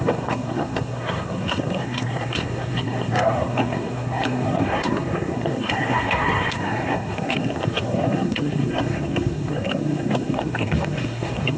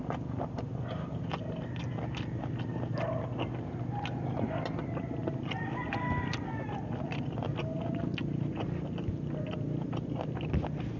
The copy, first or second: first